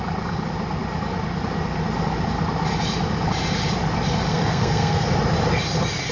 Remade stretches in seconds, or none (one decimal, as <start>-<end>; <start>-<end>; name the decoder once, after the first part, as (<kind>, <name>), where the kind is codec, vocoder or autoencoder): 4.3-5.1 (codec, SNAC)